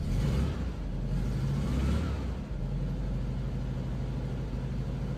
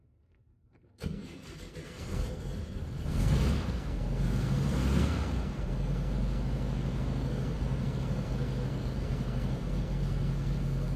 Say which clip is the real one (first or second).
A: first